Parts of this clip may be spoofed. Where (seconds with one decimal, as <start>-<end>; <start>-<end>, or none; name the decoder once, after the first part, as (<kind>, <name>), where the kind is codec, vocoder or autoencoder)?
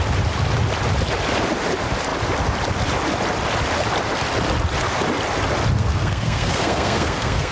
5.8-7.5 (codec, SNAC)